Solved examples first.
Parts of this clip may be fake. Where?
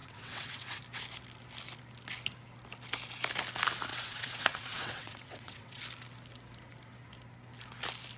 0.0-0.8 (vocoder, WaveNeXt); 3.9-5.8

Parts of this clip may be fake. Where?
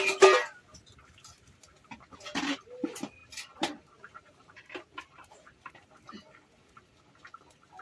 3.2-5.7 (vocoder, BigVGAN v2)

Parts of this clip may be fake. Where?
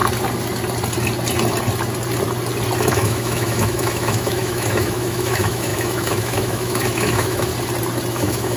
2.9-7.5 (autoencoder, DAC-VAE); 8.1-8.6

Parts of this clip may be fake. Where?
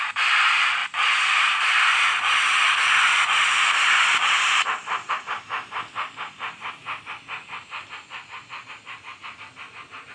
0.8-5.1 (vocoder, BigVGAN v2); 6.8-10.1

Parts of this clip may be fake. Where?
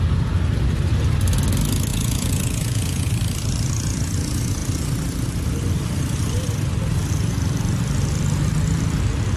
1.9-3.1 (vocoder, Vocos)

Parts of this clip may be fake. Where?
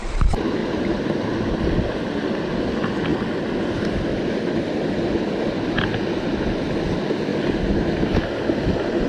none